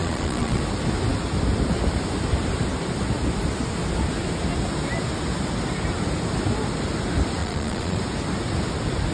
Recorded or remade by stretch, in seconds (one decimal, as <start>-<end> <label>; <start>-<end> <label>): 0.0-0.6 remade; 0.6-7.4 recorded; 7.4-8.0 remade; 8.0-9.1 recorded